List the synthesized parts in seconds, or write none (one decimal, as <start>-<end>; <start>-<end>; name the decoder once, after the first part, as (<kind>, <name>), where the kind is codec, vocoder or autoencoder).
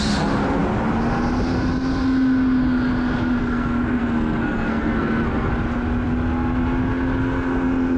3.4-5.5 (codec, SNAC)